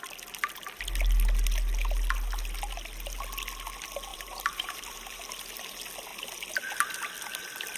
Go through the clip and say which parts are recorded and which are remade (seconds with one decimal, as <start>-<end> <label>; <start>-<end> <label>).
0.0-4.1 recorded; 4.1-5.2 remade; 5.2-7.8 recorded